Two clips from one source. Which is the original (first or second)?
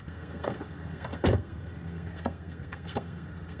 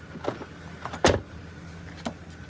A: second